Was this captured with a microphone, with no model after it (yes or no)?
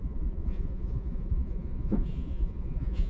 no